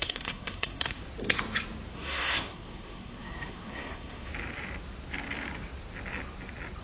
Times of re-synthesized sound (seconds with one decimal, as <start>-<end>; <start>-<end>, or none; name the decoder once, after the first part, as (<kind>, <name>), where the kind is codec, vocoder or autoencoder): 0.0-1.0 (codec, SNAC); 1.9-4.3